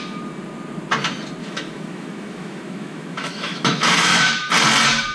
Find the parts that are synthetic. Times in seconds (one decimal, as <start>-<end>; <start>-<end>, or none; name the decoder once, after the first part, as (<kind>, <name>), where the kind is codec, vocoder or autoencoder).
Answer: 1.4-4.5 (autoencoder, DAC-VAE)